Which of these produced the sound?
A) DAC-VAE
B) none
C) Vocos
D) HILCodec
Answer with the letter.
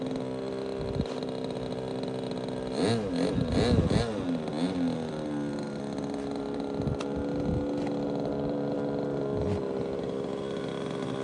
B